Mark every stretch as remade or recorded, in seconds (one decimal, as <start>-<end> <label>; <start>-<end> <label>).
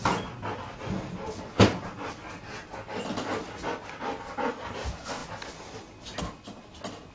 0.0-7.1 recorded